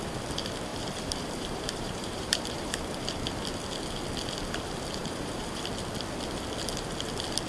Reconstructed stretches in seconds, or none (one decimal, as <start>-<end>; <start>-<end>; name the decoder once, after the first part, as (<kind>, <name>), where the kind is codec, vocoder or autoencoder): 0.7-3.1 (vocoder, BigVGAN v2); 5.0-5.6